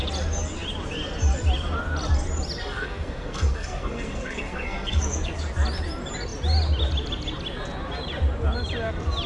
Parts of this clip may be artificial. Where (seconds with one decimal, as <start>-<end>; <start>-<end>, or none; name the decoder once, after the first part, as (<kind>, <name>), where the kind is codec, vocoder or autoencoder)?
2.6-5.0 (codec, SNAC)